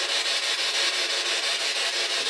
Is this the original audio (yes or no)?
yes